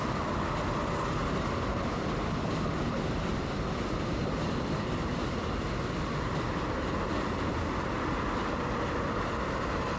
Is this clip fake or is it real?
real